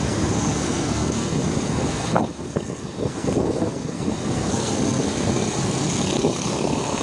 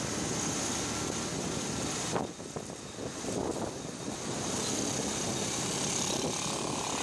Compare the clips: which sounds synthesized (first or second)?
first